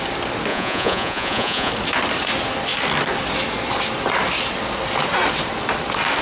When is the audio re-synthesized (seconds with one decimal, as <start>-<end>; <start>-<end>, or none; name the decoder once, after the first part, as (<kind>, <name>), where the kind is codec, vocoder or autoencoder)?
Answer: 0.5-1.7 (vocoder, Vocos)